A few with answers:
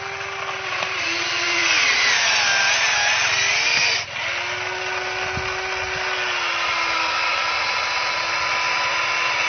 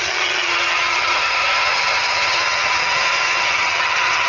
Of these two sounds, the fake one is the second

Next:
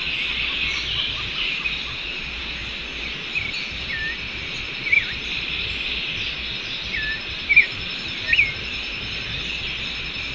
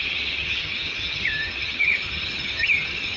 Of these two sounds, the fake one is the second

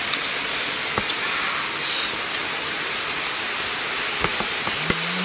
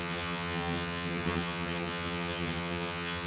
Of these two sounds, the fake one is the second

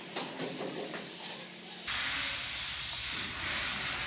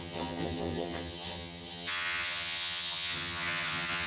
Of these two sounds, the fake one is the second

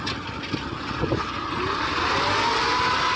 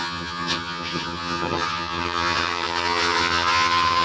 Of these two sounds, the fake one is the second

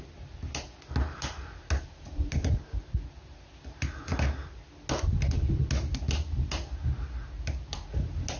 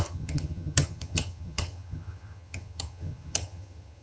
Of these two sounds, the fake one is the second